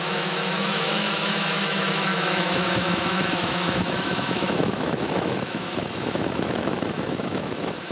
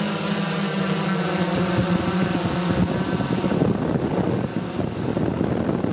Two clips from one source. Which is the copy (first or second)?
first